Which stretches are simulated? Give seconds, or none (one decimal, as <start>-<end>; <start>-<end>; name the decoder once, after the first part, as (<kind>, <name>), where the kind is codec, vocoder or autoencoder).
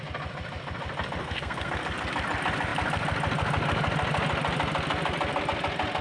1.2-1.7 (codec, SNAC)